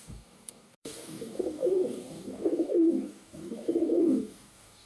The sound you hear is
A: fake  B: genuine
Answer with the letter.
A